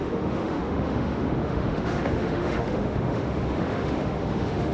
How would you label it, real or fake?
fake